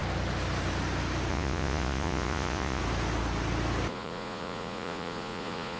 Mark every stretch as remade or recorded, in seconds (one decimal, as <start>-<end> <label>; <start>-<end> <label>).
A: 0.0-1.3 recorded; 1.3-2.8 remade; 2.8-3.9 recorded; 3.9-5.8 remade